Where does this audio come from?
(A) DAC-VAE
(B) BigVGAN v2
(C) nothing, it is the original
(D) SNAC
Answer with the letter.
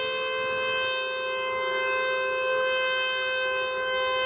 C